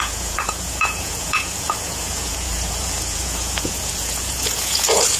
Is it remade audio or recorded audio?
remade